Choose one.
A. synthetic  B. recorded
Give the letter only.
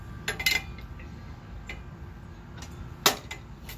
B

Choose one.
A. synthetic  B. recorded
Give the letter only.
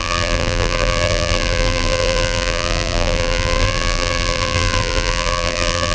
A